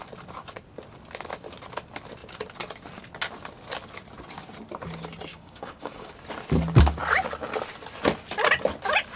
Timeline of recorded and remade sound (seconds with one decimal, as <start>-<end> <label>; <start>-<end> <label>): 0.0-5.3 recorded; 5.3-6.1 remade; 6.1-9.2 recorded